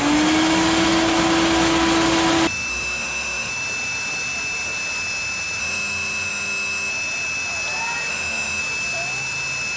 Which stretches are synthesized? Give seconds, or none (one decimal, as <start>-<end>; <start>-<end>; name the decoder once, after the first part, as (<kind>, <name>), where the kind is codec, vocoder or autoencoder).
2.7-3.5 (autoencoder, DAC-VAE); 5.6-6.9; 8.1-8.6